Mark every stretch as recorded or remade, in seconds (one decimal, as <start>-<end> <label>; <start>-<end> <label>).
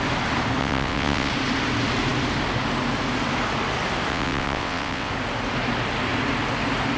0.0-0.6 recorded; 0.6-1.3 remade; 1.3-4.1 recorded; 4.1-5.1 remade; 5.1-7.0 recorded